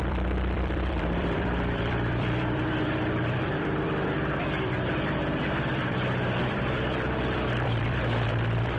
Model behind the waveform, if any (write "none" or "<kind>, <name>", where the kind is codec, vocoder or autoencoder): vocoder, BigVGAN v2